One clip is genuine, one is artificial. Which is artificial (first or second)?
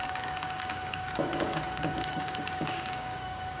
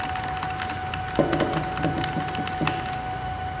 first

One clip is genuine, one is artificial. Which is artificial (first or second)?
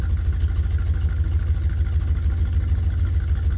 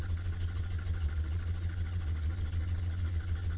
second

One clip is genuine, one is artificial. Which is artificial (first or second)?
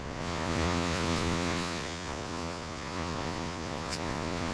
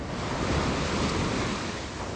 first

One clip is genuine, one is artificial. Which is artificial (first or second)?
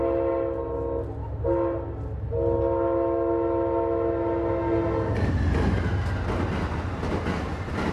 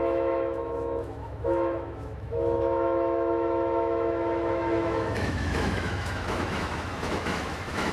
second